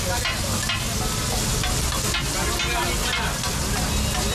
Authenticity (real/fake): real